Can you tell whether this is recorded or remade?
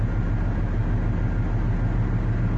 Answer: recorded